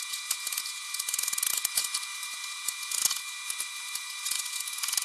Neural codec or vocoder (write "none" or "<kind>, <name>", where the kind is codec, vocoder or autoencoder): vocoder, Vocos